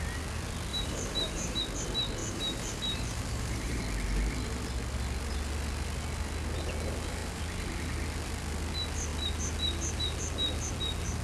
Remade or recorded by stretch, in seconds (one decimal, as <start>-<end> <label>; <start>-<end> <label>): 0.0-0.7 recorded; 0.7-1.6 remade; 1.6-2.2 recorded; 2.2-3.8 remade; 3.8-11.2 recorded